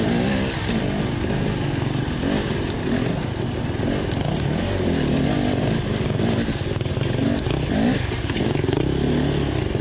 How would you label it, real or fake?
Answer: real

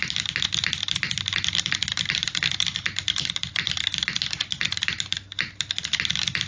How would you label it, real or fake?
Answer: real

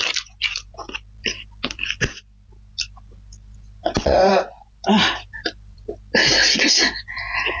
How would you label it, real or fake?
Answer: real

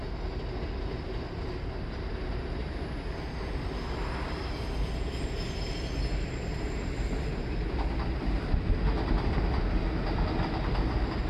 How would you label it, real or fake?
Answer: real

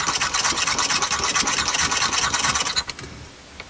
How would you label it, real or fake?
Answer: real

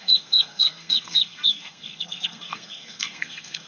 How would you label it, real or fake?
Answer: fake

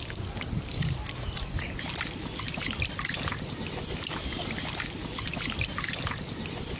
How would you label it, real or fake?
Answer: real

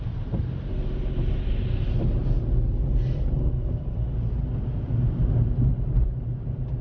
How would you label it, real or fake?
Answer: real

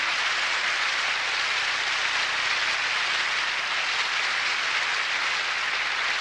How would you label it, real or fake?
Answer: real